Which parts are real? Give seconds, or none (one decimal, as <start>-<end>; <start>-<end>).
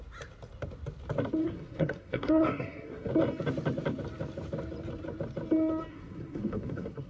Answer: 0.0-1.4; 3.1-5.9